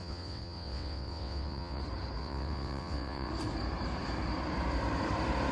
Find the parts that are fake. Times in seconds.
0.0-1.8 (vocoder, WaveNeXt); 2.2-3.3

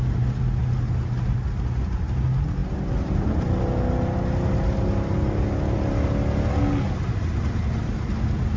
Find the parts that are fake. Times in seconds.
none

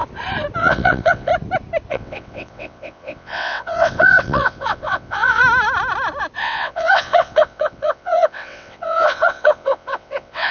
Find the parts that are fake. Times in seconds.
0.6-1.3 (vocoder, WaveNeXt); 1.9-5.4; 6.4-10.5

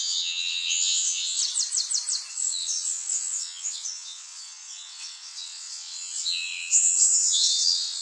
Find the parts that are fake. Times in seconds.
0.0-1.4 (vocoder, WaveNeXt); 2.3-8.0

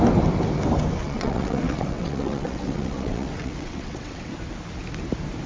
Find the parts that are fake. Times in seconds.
1.0-4.3 (vocoder, WaveNeXt)

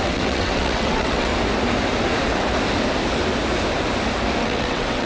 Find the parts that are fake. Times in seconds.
0.0-1.3 (vocoder, WaveNeXt); 4.4-5.1

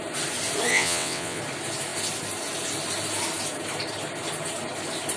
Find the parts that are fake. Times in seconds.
0.7-1.4 (vocoder, WaveNeXt)